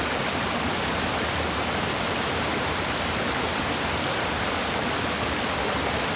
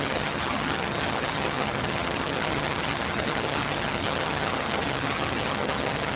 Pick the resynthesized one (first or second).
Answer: second